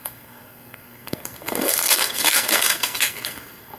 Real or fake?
fake